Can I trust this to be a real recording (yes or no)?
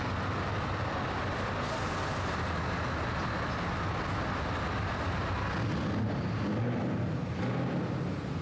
yes